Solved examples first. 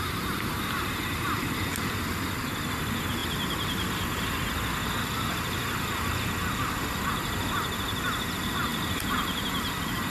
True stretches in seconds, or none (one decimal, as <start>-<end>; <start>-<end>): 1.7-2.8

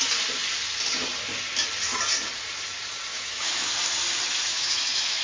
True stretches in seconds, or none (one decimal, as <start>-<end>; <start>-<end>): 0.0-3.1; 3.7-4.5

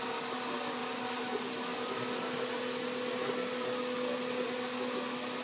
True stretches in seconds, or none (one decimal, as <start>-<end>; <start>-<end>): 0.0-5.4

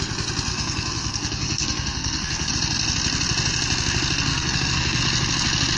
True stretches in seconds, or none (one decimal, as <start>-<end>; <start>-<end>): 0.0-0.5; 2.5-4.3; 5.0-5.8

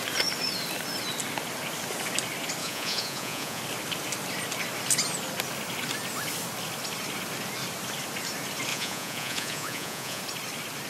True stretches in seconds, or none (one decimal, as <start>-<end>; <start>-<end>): 0.0-2.6; 3.6-8.7; 10.2-10.9

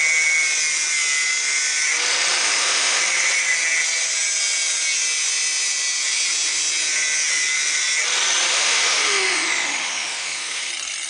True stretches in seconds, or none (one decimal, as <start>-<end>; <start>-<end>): 0.0-2.4; 3.0-8.5; 10.7-11.1

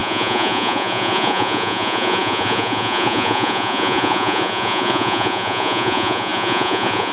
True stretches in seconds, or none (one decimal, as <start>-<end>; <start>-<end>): none

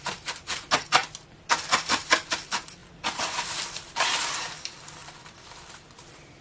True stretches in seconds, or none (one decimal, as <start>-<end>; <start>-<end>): 0.0-1.0; 2.1-2.8; 4.0-5.0